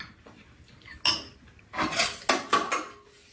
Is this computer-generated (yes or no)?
no